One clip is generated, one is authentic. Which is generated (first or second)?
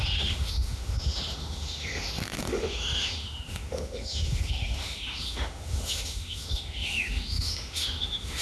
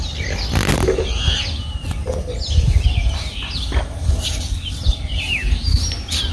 first